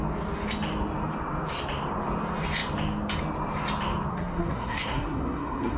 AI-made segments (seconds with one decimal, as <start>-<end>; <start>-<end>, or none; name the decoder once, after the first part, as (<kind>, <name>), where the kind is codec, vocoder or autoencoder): 4.1-5.8 (codec, SNAC)